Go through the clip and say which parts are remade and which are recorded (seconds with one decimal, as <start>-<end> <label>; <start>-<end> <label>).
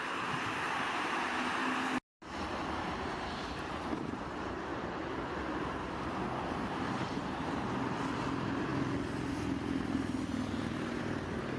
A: 0.0-1.6 remade; 1.6-2.8 recorded; 2.8-4.7 remade; 4.7-6.5 recorded; 6.5-8.7 remade; 8.7-11.0 recorded; 11.0-11.6 remade